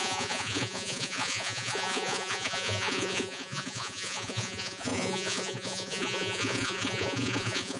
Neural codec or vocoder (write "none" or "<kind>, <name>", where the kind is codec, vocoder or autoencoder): vocoder, Vocos